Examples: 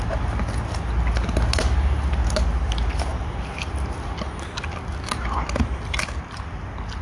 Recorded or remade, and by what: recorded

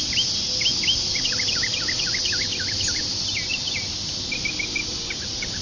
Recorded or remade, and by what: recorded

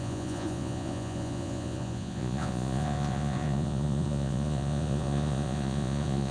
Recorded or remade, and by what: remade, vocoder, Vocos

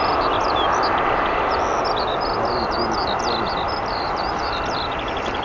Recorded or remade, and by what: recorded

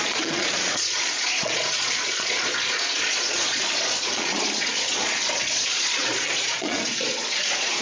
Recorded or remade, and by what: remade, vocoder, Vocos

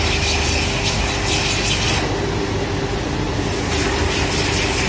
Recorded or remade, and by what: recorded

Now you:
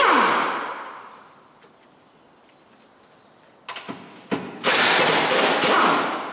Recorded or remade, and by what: recorded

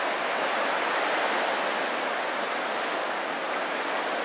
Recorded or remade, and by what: recorded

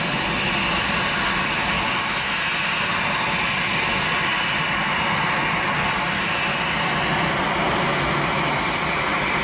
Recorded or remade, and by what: recorded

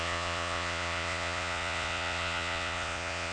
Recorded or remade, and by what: remade, vocoder, Vocos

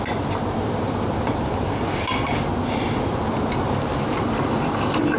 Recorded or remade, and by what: recorded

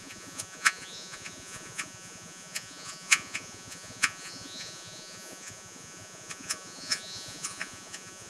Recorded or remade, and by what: remade, vocoder, Vocos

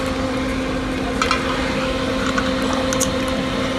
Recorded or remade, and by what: recorded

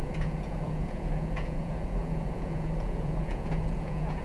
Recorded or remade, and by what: remade, vocoder, Vocos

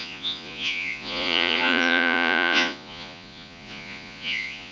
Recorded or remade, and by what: remade, vocoder, Vocos